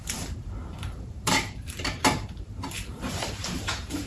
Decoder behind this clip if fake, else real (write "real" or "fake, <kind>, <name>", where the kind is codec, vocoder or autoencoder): fake, vocoder, BigVGAN v2